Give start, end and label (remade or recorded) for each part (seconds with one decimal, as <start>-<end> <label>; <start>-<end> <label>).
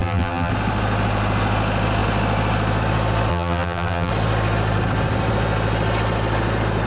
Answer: 0.0-0.5 remade; 0.5-3.3 recorded; 3.3-4.1 remade; 4.1-6.9 recorded